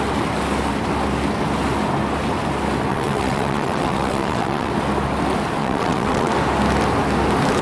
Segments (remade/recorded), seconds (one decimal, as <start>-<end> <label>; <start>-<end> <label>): 0.0-2.9 recorded; 2.9-4.7 remade; 4.7-5.6 recorded; 5.6-6.3 remade; 6.3-7.6 recorded